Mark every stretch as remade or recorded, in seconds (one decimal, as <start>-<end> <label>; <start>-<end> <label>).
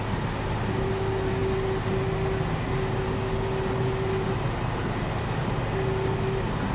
0.0-6.7 recorded